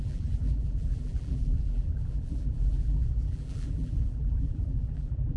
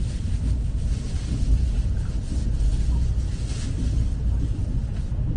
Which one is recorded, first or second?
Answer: second